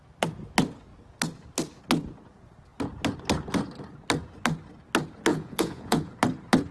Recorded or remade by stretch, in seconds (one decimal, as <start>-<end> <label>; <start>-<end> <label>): 0.0-5.3 recorded; 5.3-6.1 remade; 6.1-6.7 recorded